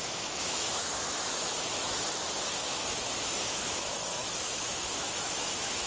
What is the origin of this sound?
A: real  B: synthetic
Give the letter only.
B